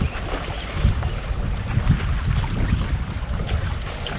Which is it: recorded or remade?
recorded